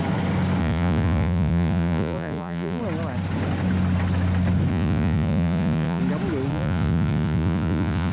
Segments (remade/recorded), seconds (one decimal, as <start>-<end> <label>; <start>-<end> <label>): 0.0-0.6 recorded; 0.6-2.8 remade; 2.8-4.7 recorded; 4.7-6.0 remade; 6.0-6.5 recorded; 6.5-8.1 remade